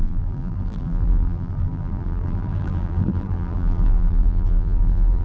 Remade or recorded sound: remade